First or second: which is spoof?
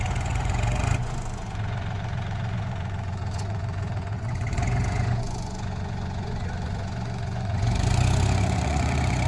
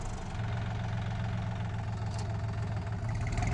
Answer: first